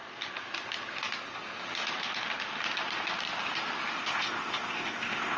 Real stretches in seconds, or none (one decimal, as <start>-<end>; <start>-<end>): 0.0-4.0

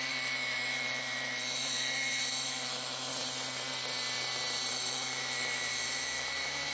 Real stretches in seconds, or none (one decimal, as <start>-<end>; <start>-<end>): 3.1-4.7

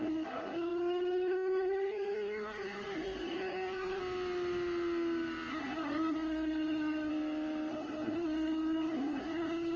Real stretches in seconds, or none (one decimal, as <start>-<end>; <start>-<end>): 4.0-5.5; 7.1-7.7

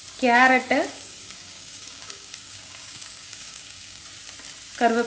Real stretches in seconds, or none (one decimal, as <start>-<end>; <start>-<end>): 0.0-0.9; 4.0-5.1

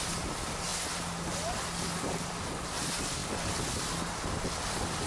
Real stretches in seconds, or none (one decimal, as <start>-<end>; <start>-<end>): 0.0-5.1

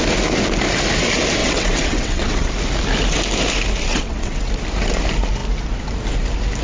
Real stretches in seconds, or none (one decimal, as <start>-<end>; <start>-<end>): 0.0-1.4; 2.5-3.9; 4.5-6.6